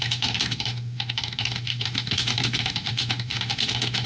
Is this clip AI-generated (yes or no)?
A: yes